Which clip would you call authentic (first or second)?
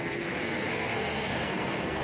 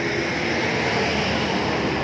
second